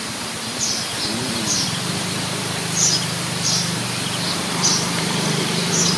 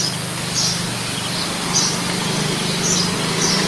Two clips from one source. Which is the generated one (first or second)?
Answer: first